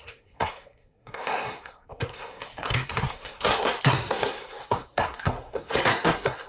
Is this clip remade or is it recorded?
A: remade